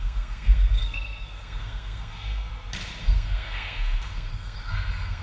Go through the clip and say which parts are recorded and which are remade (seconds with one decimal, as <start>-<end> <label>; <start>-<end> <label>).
0.0-2.5 remade; 2.5-3.0 recorded; 3.0-5.2 remade